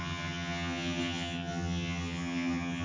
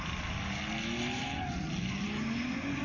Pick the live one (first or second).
second